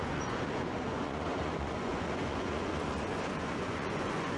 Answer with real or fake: fake